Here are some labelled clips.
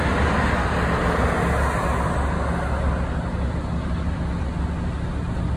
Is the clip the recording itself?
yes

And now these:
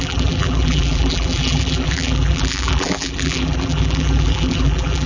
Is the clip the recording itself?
no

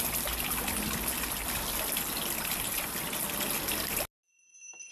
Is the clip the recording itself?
yes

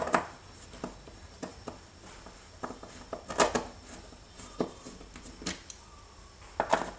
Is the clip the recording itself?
yes